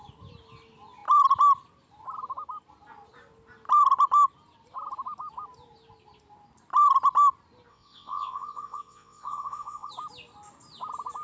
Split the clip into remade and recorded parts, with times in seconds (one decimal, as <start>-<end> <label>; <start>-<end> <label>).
0.0-7.7 recorded; 7.7-9.9 remade; 9.9-11.2 recorded